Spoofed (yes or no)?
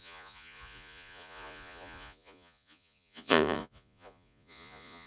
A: yes